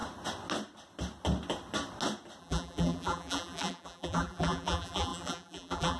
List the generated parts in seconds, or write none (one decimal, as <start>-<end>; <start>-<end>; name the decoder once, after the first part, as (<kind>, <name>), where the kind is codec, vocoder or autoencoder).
2.4-6.0 (vocoder, BigVGAN v2)